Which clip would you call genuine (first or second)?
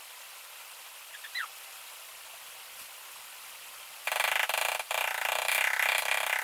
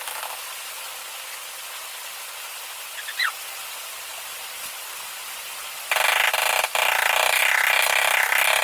second